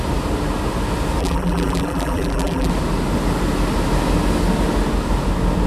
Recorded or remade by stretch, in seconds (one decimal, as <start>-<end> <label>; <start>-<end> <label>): 0.0-1.2 recorded; 1.2-2.7 remade; 2.7-5.7 recorded